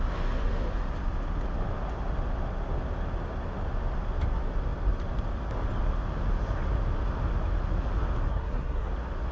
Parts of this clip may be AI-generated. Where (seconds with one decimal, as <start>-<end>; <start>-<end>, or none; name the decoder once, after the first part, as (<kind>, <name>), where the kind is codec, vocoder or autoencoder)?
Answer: 8.3-8.9 (codec, SNAC)